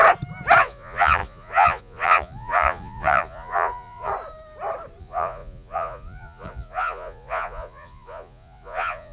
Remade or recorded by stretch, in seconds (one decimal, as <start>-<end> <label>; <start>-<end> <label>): 0.0-0.6 recorded; 0.6-4.1 remade; 4.1-5.0 recorded; 5.0-9.1 remade